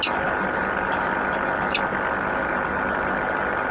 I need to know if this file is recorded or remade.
recorded